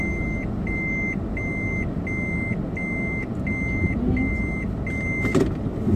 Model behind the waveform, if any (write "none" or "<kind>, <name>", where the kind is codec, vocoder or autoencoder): none